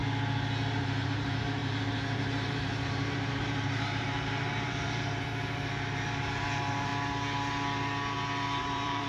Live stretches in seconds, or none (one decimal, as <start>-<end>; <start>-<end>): 0.0-0.8; 6.9-8.6